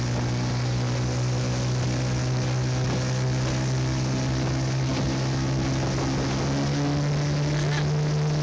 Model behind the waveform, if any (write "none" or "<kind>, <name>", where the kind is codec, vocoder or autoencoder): none